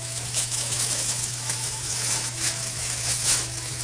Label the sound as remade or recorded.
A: remade